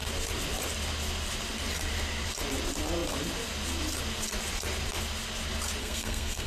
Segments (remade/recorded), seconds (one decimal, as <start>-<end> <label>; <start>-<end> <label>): 0.0-5.8 recorded; 5.8-6.5 remade